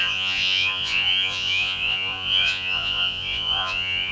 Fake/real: fake